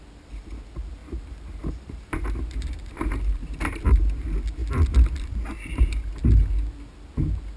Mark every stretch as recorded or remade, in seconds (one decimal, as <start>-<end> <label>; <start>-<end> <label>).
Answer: 0.0-1.0 recorded; 1.0-3.6 remade; 3.6-7.6 recorded